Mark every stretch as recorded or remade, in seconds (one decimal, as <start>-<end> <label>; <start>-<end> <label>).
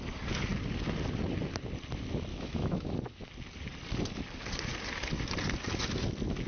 0.0-2.3 recorded; 2.3-3.3 remade; 3.3-6.5 recorded